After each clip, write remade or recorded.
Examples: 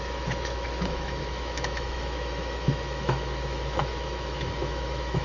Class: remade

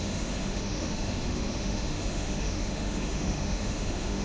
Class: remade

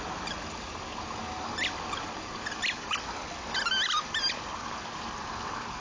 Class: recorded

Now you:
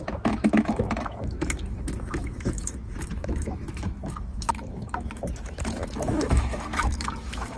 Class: remade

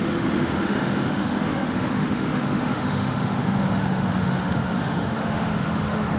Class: remade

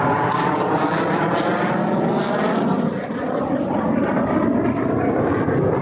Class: recorded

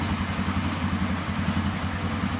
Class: recorded